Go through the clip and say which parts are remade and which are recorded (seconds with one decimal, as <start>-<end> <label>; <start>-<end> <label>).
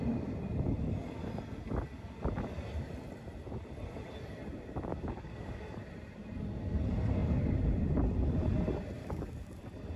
0.0-4.9 recorded; 4.9-5.8 remade; 5.8-9.0 recorded; 9.0-9.6 remade; 9.6-10.0 recorded